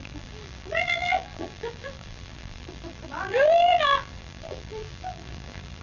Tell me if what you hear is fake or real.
fake